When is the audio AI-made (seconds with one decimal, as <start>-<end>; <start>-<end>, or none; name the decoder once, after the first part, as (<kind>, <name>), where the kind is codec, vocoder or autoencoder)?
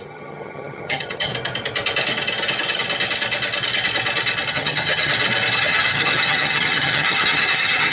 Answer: 0.0-1.3 (vocoder, HiFi-GAN); 4.5-5.1; 5.6-7.9